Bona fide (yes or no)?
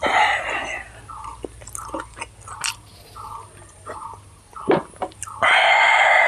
yes